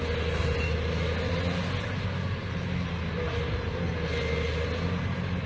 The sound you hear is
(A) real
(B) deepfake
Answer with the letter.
A